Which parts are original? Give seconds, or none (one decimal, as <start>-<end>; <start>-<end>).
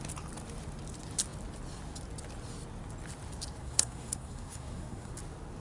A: 0.0-3.6; 5.1-5.6